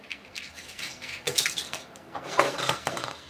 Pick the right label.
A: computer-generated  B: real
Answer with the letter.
A